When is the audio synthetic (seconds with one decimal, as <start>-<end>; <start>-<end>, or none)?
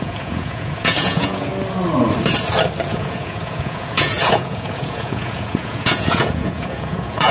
0.0-1.5; 2.9-7.3